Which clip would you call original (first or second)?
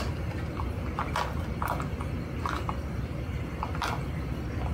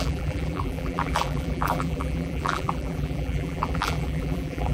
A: first